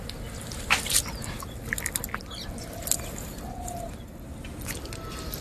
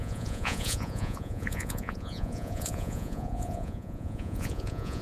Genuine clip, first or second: first